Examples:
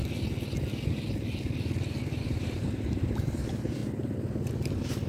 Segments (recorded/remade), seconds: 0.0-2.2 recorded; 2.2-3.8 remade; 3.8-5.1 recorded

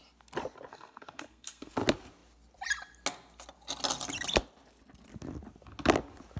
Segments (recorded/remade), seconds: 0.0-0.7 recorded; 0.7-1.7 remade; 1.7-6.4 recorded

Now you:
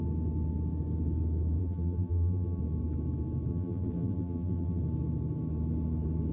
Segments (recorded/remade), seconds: 0.0-1.6 recorded; 1.6-2.6 remade; 2.6-3.5 recorded; 3.5-4.8 remade; 4.8-6.3 recorded

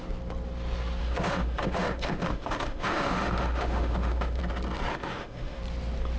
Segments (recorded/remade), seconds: 0.0-1.0 recorded; 1.0-4.4 remade; 4.4-4.9 recorded; 4.9-5.6 remade; 5.6-6.2 recorded